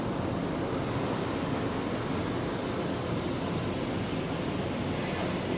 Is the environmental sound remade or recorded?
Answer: recorded